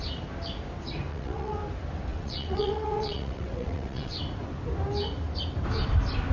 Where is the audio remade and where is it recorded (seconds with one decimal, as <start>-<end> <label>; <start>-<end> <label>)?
0.0-1.1 recorded; 1.1-1.6 remade; 1.6-2.1 recorded; 2.1-4.2 remade; 4.2-6.3 recorded